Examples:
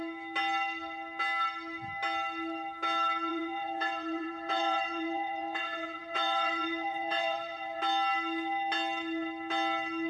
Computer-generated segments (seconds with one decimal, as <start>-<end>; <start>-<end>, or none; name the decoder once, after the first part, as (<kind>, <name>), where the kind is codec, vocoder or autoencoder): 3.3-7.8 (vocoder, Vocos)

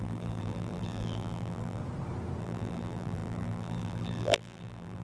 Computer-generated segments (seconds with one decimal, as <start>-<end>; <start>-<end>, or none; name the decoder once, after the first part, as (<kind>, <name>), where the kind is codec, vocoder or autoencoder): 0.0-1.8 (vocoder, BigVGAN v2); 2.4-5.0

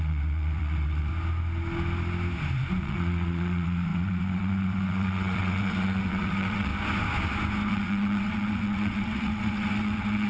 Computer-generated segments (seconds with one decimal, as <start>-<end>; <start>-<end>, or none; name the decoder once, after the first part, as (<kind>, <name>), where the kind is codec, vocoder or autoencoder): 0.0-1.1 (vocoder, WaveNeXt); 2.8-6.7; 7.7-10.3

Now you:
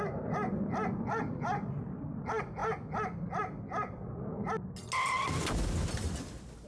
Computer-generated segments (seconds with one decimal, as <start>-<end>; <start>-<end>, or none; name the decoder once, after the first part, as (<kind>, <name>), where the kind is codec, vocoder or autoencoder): none